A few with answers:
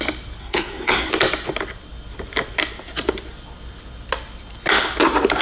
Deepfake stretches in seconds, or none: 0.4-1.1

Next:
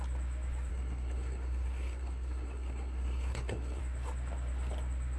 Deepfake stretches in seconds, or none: 0.7-3.8

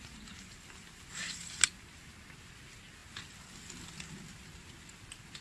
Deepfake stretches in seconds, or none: none